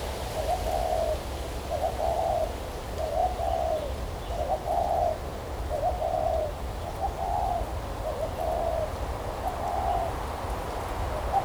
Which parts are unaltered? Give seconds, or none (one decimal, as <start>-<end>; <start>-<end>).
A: 0.0-11.4

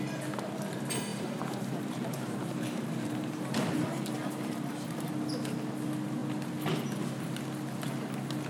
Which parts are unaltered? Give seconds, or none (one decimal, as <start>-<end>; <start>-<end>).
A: 0.0-1.1; 5.1-8.5

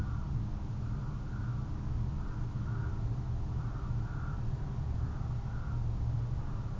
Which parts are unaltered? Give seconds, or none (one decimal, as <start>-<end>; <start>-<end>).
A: 0.0-6.8

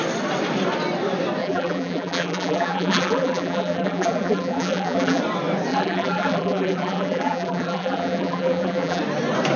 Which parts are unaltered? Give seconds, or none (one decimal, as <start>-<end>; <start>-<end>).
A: 0.0-1.4; 5.2-5.7; 9.0-9.6

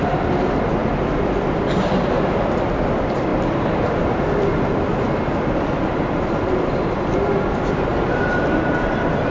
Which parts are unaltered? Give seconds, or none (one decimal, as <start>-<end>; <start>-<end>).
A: 7.9-8.9

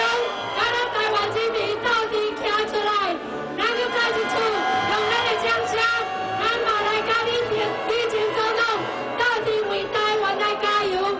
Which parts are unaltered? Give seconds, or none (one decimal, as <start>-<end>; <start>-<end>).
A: 0.0-11.2